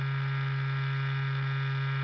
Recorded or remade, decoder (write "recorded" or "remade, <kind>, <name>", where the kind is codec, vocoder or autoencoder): recorded